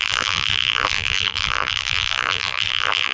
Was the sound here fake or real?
fake